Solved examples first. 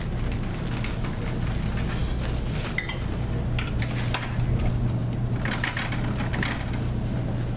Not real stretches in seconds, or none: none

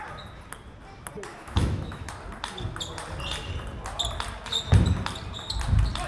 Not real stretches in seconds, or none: 1.3-2.1 (autoencoder, DAC-VAE)

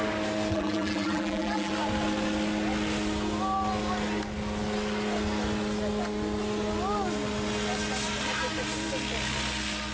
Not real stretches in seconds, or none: 0.5-1.7 (vocoder, BigVGAN v2)

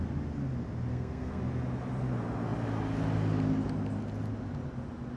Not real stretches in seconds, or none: 0.9-1.4 (codec, SNAC)

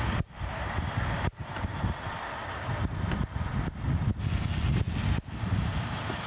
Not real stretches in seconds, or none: 0.0-1.7 (vocoder, BigVGAN v2); 5.5-6.3

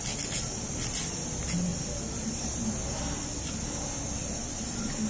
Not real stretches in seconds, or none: none

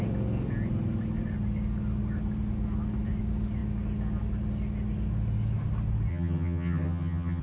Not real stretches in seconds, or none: 6.1-7.4 (vocoder, HiFi-GAN)

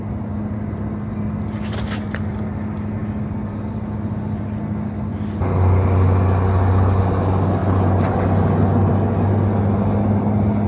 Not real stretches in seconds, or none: none